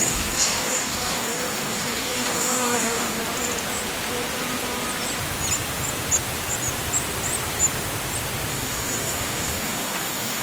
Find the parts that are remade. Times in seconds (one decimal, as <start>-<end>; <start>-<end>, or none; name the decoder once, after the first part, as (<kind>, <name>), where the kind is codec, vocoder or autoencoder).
0.0-3.2 (codec, DAC); 8.5-10.4